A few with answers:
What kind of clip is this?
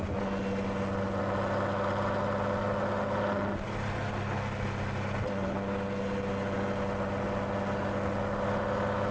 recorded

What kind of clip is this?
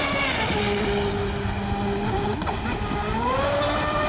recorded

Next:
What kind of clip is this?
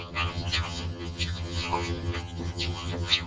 remade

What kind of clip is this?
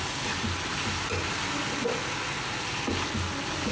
recorded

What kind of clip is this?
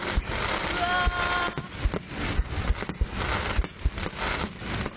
recorded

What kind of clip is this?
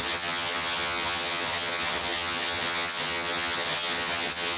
remade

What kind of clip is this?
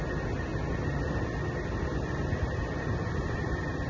recorded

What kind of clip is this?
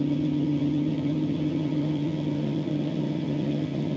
remade